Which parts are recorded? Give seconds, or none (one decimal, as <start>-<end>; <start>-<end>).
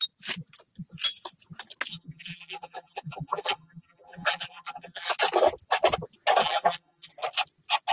0.0-1.9; 5.1-6.4; 7.1-7.9